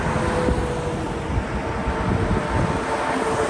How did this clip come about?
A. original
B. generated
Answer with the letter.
A